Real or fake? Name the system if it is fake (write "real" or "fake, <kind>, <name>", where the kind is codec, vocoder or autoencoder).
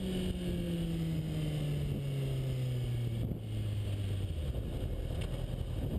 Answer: real